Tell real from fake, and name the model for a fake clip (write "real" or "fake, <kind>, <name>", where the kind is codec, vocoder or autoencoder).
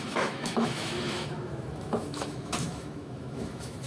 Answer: fake, autoencoder, DAC-VAE